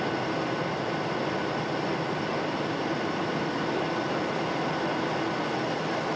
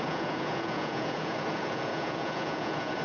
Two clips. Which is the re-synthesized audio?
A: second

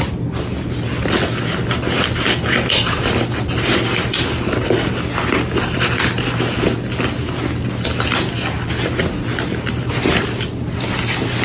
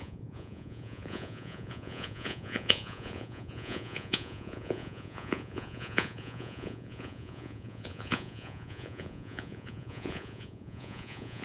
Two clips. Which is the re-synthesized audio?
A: second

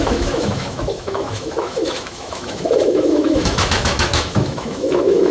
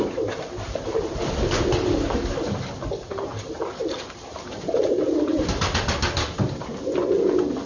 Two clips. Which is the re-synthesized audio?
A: first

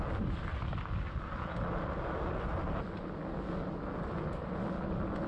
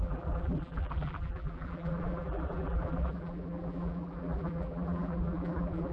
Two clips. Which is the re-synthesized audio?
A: second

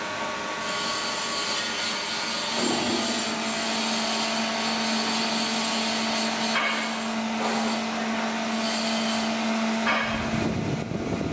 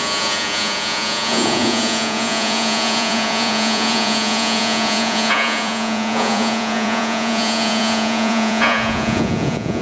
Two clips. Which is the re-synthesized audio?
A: second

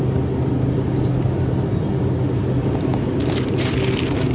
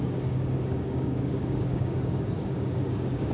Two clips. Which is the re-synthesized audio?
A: second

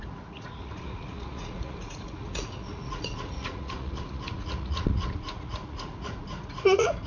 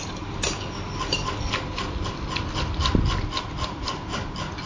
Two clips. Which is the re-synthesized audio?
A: first